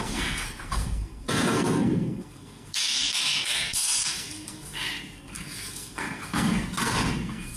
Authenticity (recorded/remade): remade